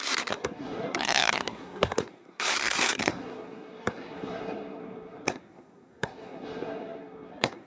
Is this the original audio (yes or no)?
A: no